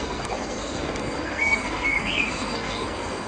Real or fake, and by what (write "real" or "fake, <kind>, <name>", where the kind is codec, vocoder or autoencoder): fake, codec, SNAC